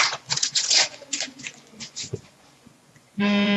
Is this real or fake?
fake